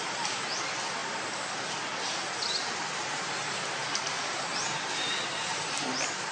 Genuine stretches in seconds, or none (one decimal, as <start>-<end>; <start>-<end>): 0.0-6.3